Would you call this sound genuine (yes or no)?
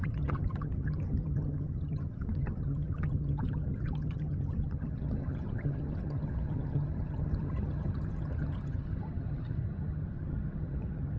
no